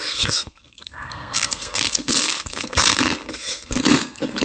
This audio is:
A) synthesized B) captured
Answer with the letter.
A